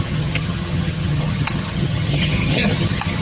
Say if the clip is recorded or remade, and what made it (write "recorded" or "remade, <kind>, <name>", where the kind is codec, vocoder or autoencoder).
remade, vocoder, HiFi-GAN